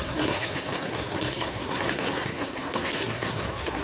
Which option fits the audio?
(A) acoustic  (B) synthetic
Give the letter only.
B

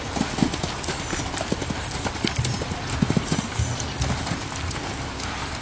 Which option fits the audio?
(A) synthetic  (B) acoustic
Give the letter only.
B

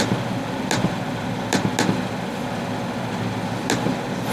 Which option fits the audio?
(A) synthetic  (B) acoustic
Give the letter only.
B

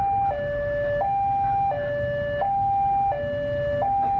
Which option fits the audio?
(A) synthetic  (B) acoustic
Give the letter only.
B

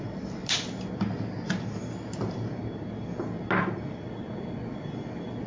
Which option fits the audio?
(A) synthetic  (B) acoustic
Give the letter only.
B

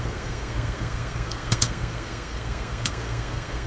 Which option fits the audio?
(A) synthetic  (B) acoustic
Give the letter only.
A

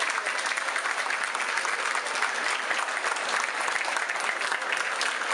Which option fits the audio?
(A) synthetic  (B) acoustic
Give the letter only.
B